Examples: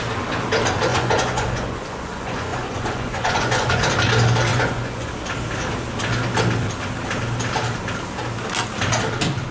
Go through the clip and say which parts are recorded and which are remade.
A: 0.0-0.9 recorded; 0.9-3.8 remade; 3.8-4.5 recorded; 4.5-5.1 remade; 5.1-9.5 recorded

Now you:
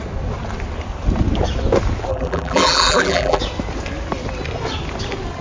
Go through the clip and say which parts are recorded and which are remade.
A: 0.0-2.1 recorded; 2.1-3.4 remade; 3.4-5.4 recorded